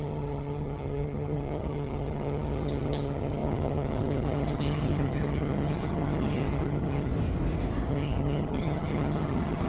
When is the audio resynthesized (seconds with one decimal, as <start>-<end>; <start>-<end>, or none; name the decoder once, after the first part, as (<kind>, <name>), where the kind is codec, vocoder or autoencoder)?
0.0-7.1 (vocoder, HiFi-GAN); 7.9-9.7